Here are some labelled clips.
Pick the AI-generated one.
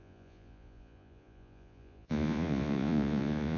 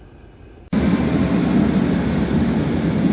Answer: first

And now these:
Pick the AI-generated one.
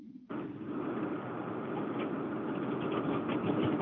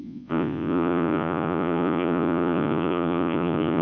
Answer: second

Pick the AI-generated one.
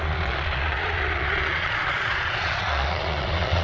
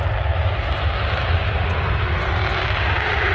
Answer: first